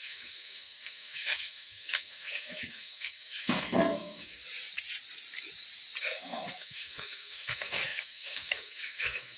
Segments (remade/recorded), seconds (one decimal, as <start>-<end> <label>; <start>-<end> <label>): 0.0-4.4 remade; 4.4-6.0 recorded; 6.0-9.4 remade

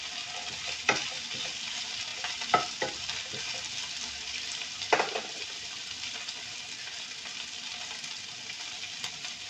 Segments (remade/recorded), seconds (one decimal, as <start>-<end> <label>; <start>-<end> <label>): 0.0-9.5 recorded